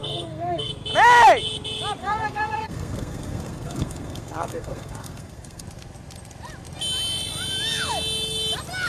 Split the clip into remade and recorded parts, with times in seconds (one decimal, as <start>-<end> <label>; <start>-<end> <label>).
0.0-0.7 remade; 0.7-2.0 recorded; 2.0-5.6 remade; 5.6-8.9 recorded